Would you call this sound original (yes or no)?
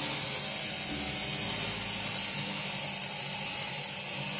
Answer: yes